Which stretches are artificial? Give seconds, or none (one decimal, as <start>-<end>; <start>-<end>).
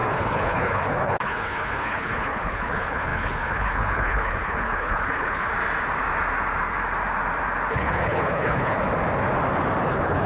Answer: 0.0-5.5; 7.7-8.8; 9.8-10.3